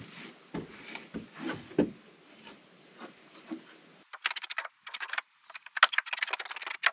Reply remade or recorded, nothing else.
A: recorded